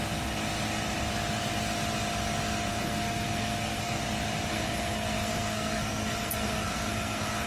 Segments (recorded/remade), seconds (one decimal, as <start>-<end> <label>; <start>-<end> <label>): 0.0-2.7 recorded; 2.7-4.0 remade; 4.0-4.5 recorded; 4.5-7.5 remade